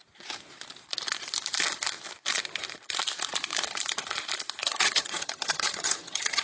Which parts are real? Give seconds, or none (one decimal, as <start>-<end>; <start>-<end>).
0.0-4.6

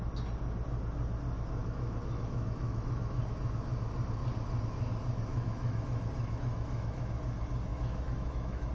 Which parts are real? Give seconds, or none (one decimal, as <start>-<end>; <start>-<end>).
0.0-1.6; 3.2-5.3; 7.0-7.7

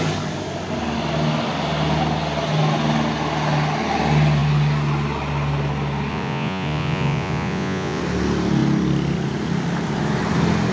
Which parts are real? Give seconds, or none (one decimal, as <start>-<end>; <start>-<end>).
0.0-6.1; 8.0-10.7